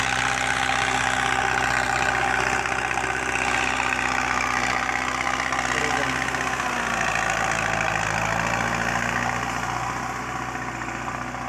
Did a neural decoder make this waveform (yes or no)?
no